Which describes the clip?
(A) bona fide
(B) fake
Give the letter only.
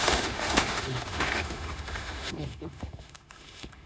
B